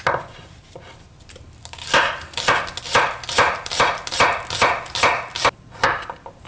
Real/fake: real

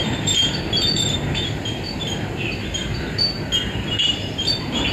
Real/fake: fake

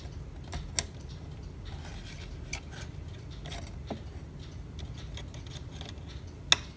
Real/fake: real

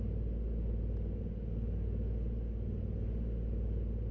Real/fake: real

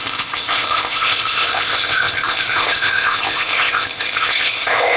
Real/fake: fake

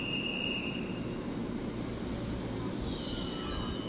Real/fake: real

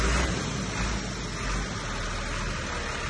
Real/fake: real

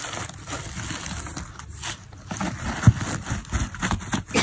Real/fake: real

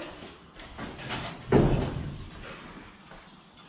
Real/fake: real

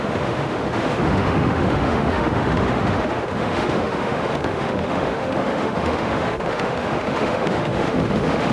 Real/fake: fake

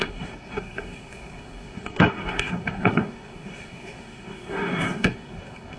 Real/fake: fake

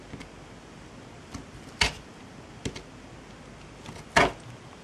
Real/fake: real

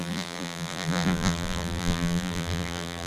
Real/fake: fake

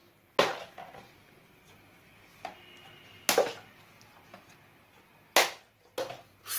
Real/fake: real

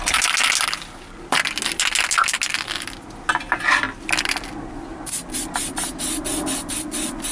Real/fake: real